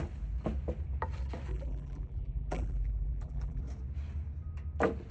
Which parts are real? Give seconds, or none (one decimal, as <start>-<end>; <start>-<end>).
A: 0.0-1.5; 3.6-5.1